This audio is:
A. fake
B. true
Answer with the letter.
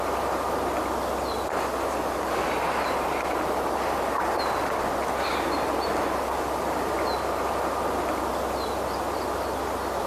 B